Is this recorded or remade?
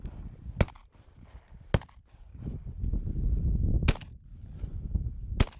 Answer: recorded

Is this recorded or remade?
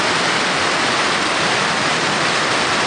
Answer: recorded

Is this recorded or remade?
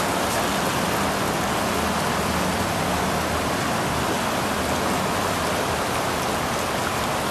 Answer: recorded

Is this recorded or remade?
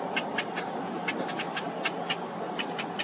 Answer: recorded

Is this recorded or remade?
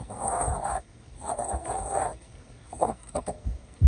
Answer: remade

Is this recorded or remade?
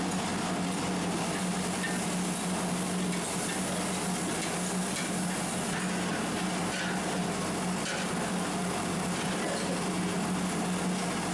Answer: recorded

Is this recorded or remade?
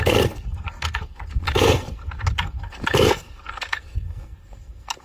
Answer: remade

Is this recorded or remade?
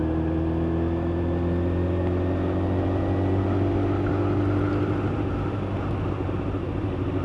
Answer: recorded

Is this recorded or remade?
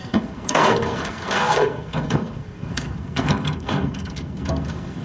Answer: remade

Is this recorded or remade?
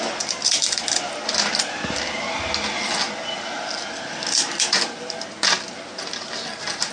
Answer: recorded